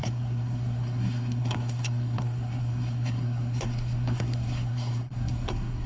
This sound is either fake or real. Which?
fake